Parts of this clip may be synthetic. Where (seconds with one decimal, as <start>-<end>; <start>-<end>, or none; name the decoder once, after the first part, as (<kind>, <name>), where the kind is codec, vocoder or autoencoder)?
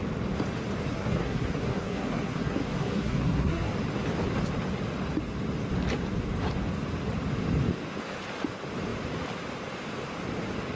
0.9-3.7 (codec, SNAC)